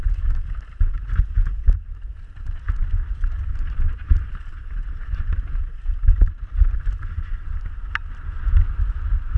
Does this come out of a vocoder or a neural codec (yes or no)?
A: no